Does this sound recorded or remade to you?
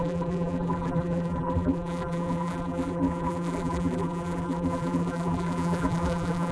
remade